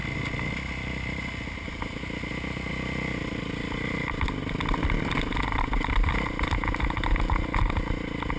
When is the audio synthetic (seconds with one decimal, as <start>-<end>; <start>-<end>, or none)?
none